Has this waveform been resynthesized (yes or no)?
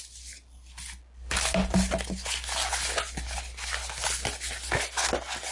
no